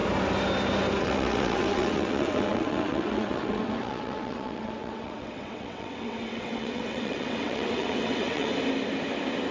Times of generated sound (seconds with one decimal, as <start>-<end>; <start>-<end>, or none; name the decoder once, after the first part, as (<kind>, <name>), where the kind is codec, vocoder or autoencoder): 1.0-8.5 (vocoder, WaveNeXt)

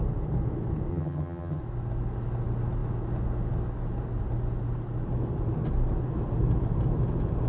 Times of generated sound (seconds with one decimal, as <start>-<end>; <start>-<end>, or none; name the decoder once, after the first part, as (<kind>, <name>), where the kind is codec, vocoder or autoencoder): 0.9-1.6 (vocoder, HiFi-GAN)

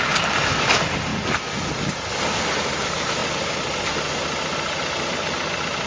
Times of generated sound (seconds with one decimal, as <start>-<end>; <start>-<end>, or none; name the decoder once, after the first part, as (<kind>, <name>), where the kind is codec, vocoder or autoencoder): none

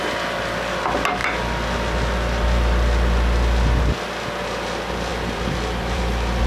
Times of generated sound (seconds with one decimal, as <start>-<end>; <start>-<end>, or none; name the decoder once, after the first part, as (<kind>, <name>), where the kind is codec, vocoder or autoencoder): 5.1-6.5 (vocoder, BigVGAN v2)